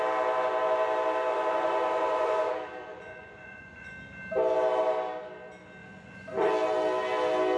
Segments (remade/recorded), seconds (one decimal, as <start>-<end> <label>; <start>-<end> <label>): 0.0-1.3 recorded; 1.3-2.5 remade; 2.5-2.9 recorded; 2.9-3.9 remade; 3.9-5.8 recorded; 5.8-6.5 remade; 6.5-7.6 recorded